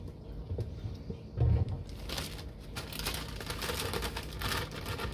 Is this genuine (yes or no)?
yes